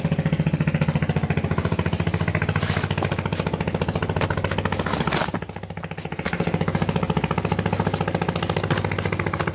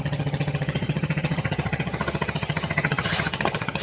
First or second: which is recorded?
first